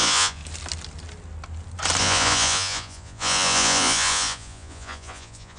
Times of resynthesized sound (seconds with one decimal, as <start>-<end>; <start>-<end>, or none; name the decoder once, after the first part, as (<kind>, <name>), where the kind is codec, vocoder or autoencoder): 0.0-0.4 (vocoder, Vocos); 2.0-5.6